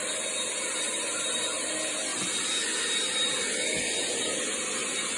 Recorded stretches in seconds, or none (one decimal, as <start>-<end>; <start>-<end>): 0.0-0.8; 2.1-5.2

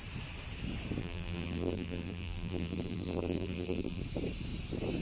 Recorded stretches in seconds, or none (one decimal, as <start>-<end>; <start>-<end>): 0.0-1.0; 4.0-5.0

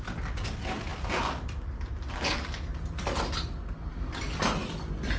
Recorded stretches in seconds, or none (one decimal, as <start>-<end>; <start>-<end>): 0.0-4.6